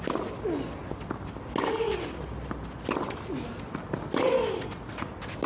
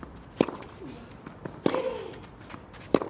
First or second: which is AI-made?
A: second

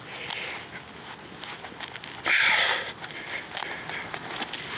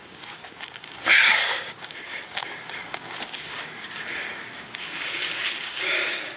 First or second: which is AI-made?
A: second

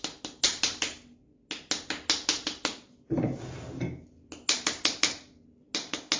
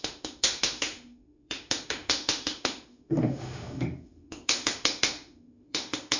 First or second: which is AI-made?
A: second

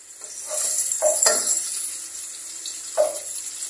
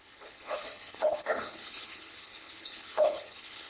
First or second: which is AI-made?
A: second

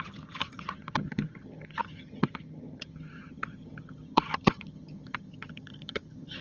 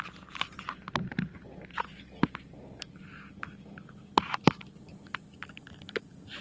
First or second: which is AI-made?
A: first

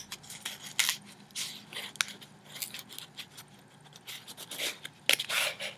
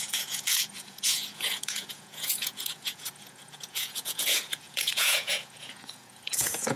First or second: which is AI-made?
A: second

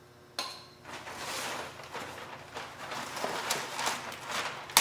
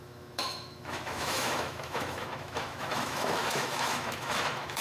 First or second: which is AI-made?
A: second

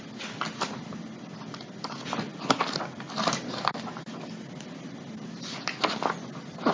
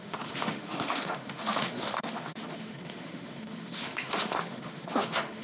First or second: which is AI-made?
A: second